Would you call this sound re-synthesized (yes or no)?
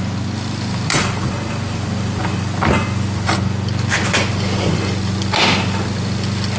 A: no